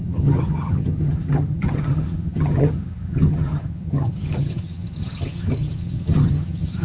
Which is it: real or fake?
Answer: fake